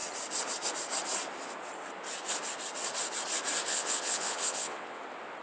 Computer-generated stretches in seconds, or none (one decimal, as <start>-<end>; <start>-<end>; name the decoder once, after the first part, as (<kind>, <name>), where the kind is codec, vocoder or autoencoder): 3.7-5.0 (vocoder, WaveNeXt)